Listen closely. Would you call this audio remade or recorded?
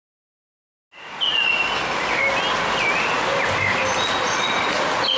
recorded